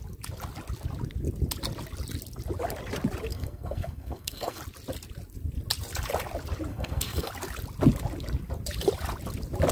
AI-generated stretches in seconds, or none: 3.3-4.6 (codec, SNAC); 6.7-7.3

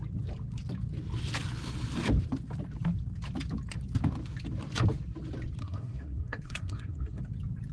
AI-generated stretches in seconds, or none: 5.6-7.2 (codec, SNAC)

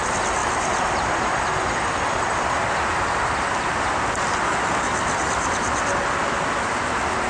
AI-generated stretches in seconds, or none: none

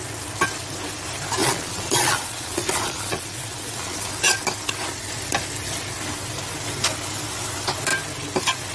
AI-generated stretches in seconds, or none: 1.4-4.1 (vocoder, Vocos)

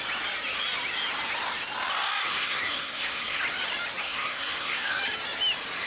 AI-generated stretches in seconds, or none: 2.3-3.4 (codec, SNAC); 4.0-5.0